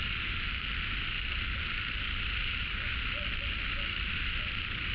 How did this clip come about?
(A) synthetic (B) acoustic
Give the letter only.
B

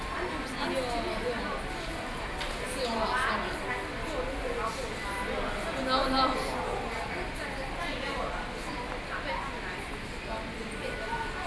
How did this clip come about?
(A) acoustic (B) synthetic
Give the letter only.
A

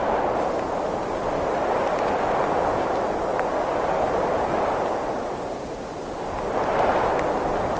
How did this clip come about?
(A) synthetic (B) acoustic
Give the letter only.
B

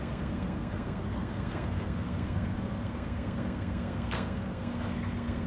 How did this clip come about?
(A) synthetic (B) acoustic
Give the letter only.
A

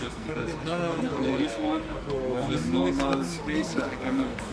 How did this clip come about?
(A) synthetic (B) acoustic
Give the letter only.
A